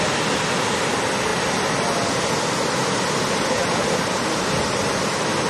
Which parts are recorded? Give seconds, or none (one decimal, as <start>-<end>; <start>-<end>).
0.0-5.5

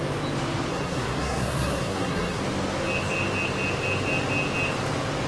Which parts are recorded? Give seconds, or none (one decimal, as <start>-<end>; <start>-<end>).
0.0-0.7; 2.4-5.3

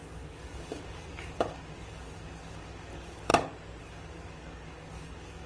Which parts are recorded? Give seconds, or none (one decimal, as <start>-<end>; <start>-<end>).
3.3-3.8

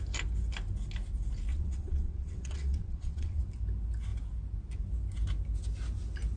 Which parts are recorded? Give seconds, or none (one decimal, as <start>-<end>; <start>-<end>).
0.0-1.5; 3.4-6.4

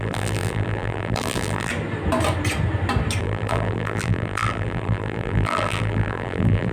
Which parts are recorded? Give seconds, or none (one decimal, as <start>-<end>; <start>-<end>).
1.7-3.2

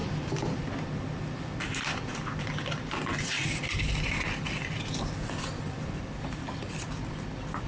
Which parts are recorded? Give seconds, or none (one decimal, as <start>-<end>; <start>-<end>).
none

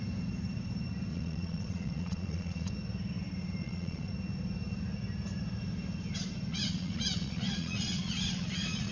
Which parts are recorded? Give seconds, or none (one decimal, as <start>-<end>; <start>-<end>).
0.0-1.1; 2.7-3.6; 4.1-6.5

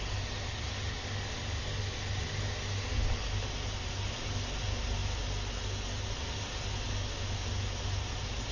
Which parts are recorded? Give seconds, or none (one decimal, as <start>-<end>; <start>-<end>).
0.0-8.5